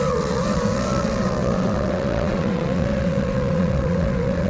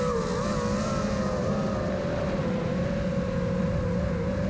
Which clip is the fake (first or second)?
first